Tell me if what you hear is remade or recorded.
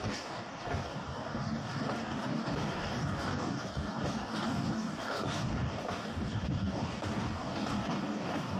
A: remade